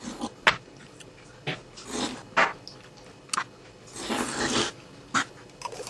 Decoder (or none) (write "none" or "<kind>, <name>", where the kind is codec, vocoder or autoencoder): none